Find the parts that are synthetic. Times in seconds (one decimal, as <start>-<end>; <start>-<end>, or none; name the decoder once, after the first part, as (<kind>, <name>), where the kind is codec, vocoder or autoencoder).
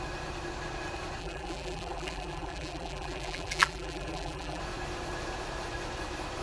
1.2-4.6 (vocoder, BigVGAN v2)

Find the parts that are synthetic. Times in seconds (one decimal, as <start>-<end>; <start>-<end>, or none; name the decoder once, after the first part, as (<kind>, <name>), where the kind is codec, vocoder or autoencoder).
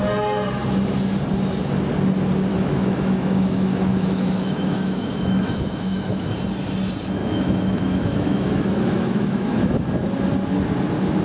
2.5-6.3 (autoencoder, DAC-VAE); 7.2-9.8